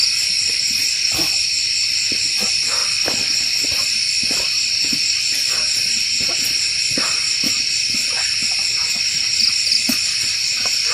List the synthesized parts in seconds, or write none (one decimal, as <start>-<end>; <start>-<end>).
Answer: 2.8-5.2